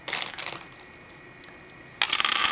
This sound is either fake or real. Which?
real